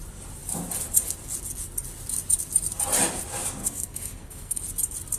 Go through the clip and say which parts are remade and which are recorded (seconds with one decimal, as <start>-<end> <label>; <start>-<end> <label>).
0.0-3.6 recorded; 3.6-4.6 remade; 4.6-5.2 recorded

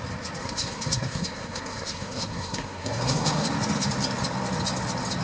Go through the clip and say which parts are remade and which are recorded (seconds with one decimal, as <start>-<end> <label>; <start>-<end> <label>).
0.0-0.4 recorded; 0.4-3.5 remade; 3.5-5.2 recorded

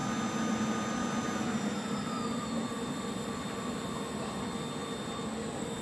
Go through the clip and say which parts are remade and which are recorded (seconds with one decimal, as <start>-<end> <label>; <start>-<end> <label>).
0.0-5.8 recorded

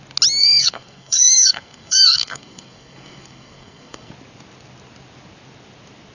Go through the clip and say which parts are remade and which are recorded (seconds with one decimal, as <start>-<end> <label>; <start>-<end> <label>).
0.0-0.4 recorded; 0.4-4.1 remade; 4.1-6.1 recorded

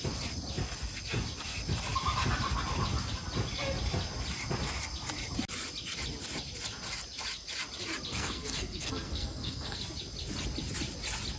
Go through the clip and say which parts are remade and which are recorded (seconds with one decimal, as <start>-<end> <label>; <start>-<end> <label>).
0.0-8.1 recorded; 8.1-9.8 remade; 9.8-11.4 recorded

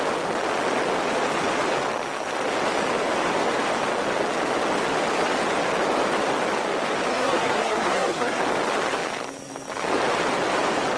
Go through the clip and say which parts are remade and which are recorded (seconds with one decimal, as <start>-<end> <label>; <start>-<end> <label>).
0.0-7.1 recorded; 7.1-8.4 remade; 8.4-11.0 recorded

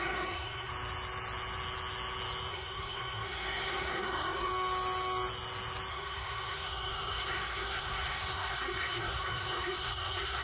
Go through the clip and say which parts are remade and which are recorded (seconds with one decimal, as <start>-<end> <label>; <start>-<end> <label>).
0.0-0.7 remade; 0.7-2.5 recorded; 2.5-4.5 remade; 4.5-5.9 recorded; 5.9-10.4 remade